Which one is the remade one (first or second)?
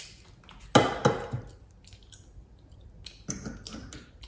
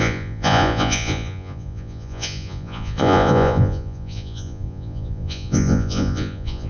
second